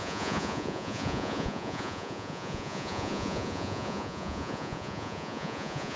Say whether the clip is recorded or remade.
remade